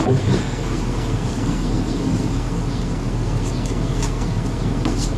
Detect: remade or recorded remade